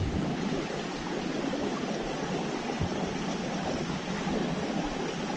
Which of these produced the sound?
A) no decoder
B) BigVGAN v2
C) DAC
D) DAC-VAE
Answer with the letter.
A